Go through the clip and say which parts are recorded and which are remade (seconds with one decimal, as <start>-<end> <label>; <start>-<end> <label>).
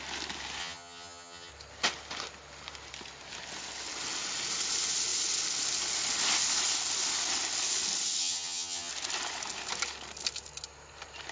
0.0-0.6 recorded; 0.6-1.5 remade; 1.5-8.2 recorded; 8.2-8.9 remade; 8.9-11.3 recorded